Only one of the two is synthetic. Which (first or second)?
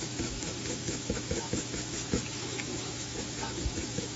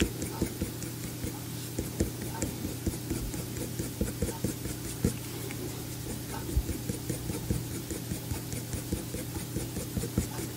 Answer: first